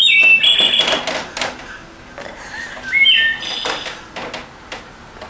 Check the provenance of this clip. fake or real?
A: real